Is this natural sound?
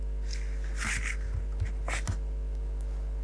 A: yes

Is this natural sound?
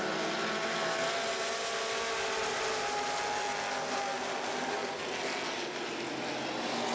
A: yes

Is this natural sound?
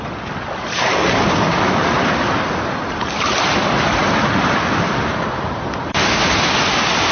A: yes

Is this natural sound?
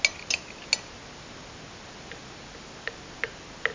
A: yes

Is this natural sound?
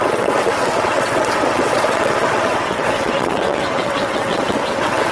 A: no